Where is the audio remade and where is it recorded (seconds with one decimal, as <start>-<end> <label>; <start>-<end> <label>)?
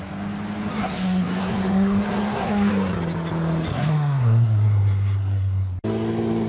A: 0.0-0.7 recorded; 0.7-2.7 remade; 2.7-3.7 recorded; 3.7-5.7 remade; 5.7-6.5 recorded